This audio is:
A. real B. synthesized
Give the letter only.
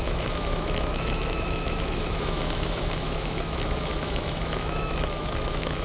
B